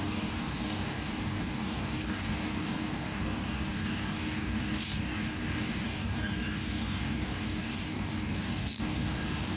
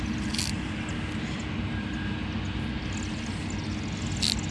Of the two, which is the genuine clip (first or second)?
second